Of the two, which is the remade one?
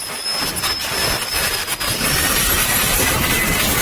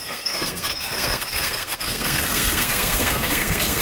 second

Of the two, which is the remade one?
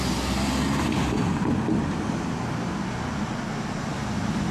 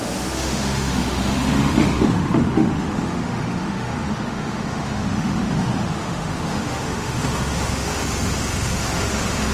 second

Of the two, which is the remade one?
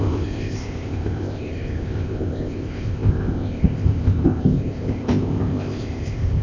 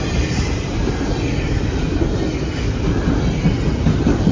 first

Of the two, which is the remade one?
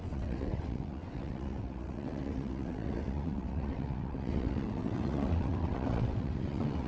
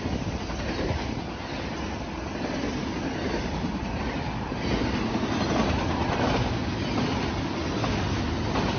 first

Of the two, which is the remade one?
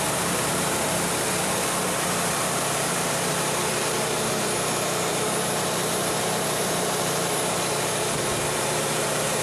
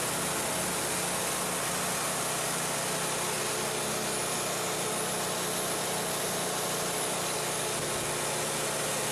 first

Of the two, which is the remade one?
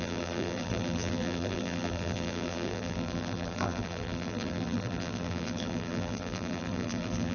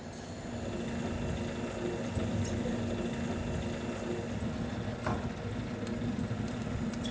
first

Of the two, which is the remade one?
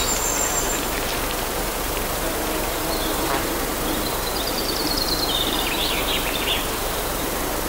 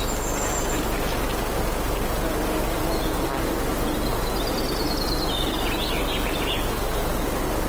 first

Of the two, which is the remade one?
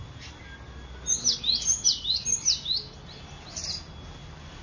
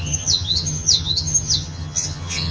second